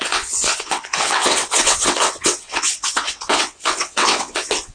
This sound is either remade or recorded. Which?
remade